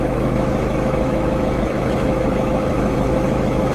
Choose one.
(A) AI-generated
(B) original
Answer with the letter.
A